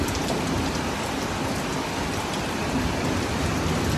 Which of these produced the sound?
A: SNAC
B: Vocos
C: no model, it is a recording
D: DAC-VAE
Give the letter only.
C